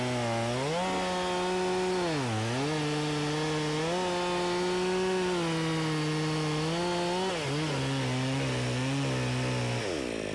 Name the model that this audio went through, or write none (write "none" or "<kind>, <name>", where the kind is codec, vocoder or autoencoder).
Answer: none